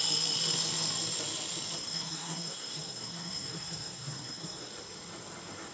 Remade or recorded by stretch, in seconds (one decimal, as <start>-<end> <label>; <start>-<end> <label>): 0.0-1.8 recorded; 1.8-4.7 remade; 4.7-5.7 recorded